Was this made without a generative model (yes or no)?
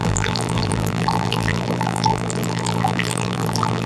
no